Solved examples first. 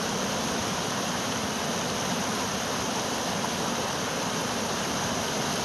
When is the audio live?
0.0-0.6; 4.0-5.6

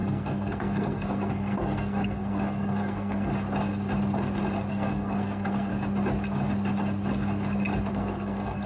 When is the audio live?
3.3-4.7; 5.7-7.9